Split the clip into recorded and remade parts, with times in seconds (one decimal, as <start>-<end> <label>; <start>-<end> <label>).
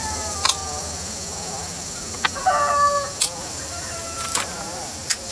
0.0-0.6 remade; 0.6-3.5 recorded; 3.5-5.3 remade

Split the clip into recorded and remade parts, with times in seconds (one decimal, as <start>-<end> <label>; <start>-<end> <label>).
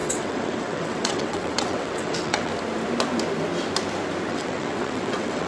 0.0-2.5 remade; 2.5-4.3 recorded; 4.3-5.5 remade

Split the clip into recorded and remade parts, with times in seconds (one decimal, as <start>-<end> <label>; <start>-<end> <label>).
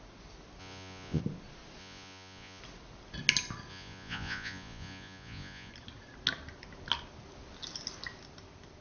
0.0-0.6 recorded; 0.6-1.2 remade; 1.2-1.8 recorded; 1.8-2.6 remade; 2.6-3.7 recorded; 3.7-5.7 remade; 5.7-8.8 recorded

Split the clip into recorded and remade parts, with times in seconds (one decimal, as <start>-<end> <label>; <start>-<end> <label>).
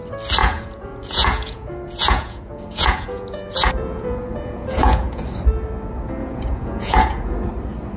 0.0-0.4 recorded; 0.4-5.2 remade; 5.2-6.2 recorded; 6.2-7.5 remade; 7.5-8.0 recorded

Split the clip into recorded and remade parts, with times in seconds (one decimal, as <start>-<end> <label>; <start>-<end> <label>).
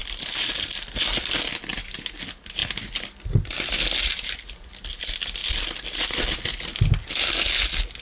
0.0-8.0 recorded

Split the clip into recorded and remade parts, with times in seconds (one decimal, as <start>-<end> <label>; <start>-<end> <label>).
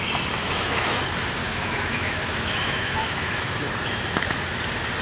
0.0-0.4 recorded; 0.4-1.0 remade; 1.0-1.4 recorded; 1.4-3.7 remade; 3.7-5.0 recorded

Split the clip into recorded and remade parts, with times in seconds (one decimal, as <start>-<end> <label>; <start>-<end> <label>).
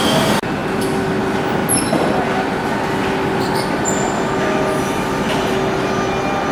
0.0-6.5 recorded